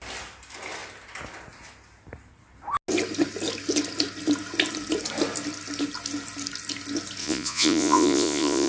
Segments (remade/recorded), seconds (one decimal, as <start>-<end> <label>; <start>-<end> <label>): 0.0-7.2 recorded; 7.2-8.7 remade

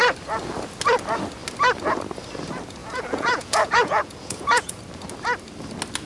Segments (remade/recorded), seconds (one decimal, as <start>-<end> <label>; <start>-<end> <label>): 0.0-2.8 recorded; 2.8-4.8 remade; 4.8-6.1 recorded

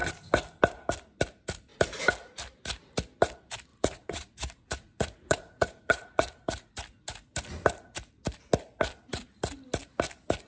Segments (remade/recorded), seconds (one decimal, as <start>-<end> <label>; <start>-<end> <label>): 0.0-3.7 recorded; 3.7-6.7 remade; 6.7-10.5 recorded

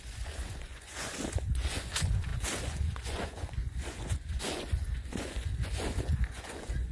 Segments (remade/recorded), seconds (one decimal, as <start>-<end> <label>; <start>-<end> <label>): 0.0-6.9 remade

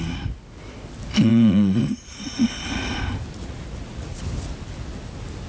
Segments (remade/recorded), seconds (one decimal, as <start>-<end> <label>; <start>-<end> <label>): 0.0-1.3 recorded; 1.3-2.5 remade; 2.5-3.4 recorded; 3.4-4.2 remade; 4.2-5.5 recorded

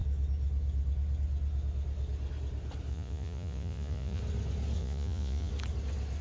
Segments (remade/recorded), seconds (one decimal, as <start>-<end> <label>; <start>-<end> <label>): 0.0-2.9 recorded; 2.9-4.2 remade; 4.2-4.8 recorded; 4.8-5.5 remade; 5.5-6.2 recorded